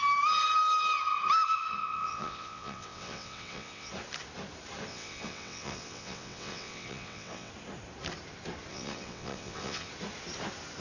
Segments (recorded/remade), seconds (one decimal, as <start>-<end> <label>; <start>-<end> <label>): 0.0-1.8 recorded; 1.8-3.9 remade; 3.9-4.9 recorded; 4.9-7.5 remade; 7.5-8.7 recorded; 8.7-9.9 remade; 9.9-10.8 recorded